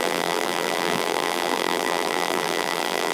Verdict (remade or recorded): remade